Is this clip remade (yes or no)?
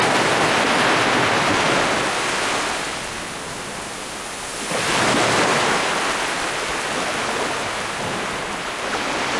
no